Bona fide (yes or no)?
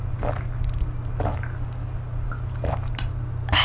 yes